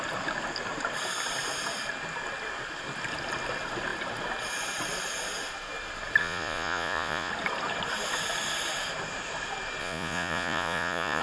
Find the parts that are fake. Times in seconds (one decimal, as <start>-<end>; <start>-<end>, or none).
6.2-7.3; 9.8-11.2

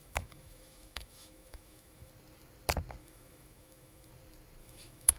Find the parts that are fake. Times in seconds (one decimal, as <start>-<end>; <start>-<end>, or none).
0.0-2.1; 3.0-4.1; 4.6-5.2

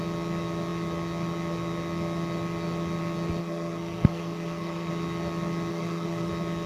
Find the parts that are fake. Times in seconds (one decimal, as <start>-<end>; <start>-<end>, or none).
3.4-4.9; 5.7-6.3

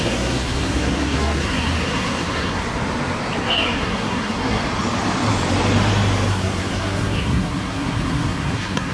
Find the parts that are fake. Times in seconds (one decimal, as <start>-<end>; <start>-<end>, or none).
0.0-2.6; 3.4-4.6; 6.3-8.9

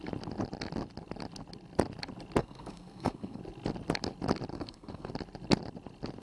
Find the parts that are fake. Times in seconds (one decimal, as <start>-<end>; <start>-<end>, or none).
2.4-3.4; 4.5-5.1

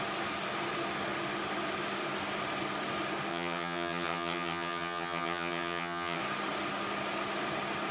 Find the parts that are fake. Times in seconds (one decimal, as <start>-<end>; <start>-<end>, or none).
3.3-6.2